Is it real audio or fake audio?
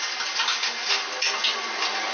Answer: real